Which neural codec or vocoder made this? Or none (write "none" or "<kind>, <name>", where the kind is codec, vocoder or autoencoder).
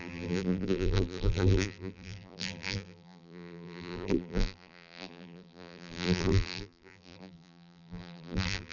vocoder, BigVGAN v2